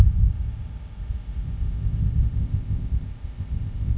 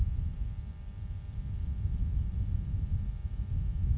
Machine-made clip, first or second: first